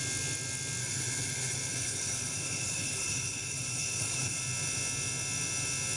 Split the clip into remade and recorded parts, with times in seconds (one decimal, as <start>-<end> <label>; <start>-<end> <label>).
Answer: 0.0-0.8 recorded; 0.8-4.4 remade; 4.4-6.0 recorded